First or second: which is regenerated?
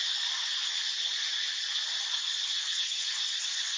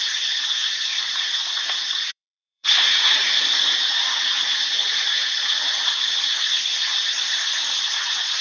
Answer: second